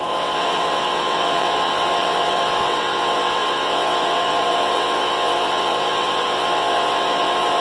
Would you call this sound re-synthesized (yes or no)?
yes